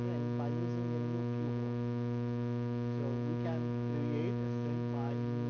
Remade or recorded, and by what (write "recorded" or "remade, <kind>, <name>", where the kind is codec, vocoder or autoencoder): recorded